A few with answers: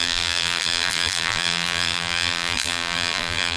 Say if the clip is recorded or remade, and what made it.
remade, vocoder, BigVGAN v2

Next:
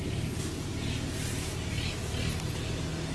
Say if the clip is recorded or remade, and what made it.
recorded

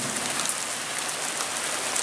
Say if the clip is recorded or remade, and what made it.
recorded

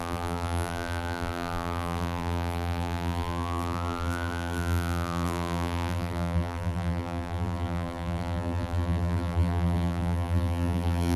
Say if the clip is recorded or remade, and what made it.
remade, vocoder, BigVGAN v2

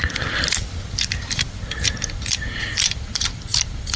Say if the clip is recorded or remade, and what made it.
remade, vocoder, BigVGAN v2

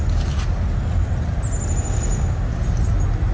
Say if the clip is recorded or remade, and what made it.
recorded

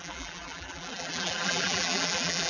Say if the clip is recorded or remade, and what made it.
remade, vocoder, BigVGAN v2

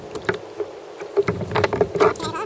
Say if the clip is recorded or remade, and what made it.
recorded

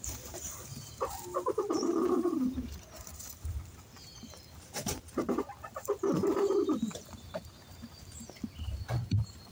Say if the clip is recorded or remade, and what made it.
remade, vocoder, BigVGAN v2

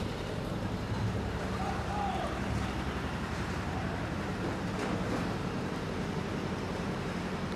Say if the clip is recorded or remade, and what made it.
remade, vocoder, BigVGAN v2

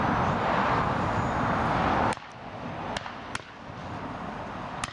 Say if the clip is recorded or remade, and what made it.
recorded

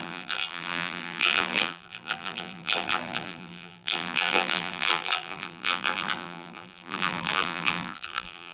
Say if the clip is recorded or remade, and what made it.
remade, vocoder, BigVGAN v2